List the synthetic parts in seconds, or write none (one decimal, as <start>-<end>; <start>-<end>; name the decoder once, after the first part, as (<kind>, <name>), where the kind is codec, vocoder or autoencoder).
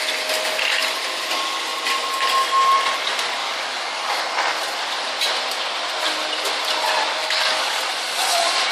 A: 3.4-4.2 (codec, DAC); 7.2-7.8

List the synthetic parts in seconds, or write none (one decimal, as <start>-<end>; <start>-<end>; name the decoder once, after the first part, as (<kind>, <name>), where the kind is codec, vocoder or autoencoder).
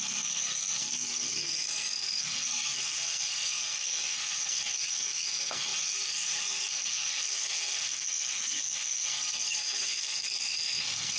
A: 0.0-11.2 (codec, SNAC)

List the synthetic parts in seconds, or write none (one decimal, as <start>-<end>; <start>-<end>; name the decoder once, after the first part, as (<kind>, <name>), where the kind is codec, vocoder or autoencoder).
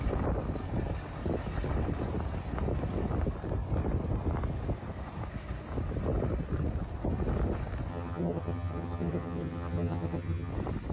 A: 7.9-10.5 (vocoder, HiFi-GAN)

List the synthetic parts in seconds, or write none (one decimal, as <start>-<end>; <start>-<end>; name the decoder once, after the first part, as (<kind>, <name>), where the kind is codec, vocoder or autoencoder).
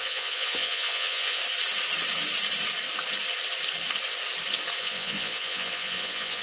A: 0.0-1.4 (vocoder, Vocos); 4.8-6.4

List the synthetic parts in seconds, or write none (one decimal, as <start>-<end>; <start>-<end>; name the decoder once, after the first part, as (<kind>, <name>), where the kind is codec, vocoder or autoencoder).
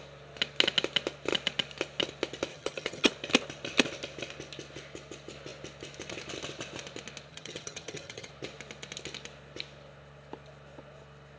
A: 2.5-3.1 (vocoder, HiFi-GAN); 7.3-8.3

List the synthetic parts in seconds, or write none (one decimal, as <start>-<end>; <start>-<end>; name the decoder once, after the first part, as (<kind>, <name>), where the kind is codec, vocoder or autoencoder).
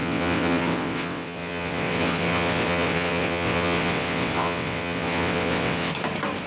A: 0.0-5.9 (vocoder, WaveNeXt)